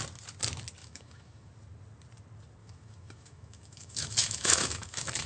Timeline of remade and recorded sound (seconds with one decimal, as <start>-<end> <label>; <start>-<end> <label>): 0.0-0.8 recorded; 0.8-1.5 remade; 1.5-2.6 recorded; 2.6-5.3 remade